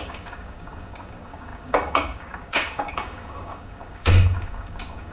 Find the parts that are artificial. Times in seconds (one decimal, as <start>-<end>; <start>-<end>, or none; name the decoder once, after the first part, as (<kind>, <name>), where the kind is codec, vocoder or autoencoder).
0.0-5.1 (codec, DAC)